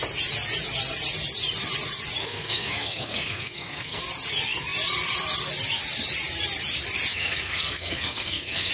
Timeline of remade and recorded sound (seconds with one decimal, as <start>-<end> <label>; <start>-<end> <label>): 0.0-2.2 recorded; 2.2-4.0 remade; 4.0-7.1 recorded; 7.1-8.7 remade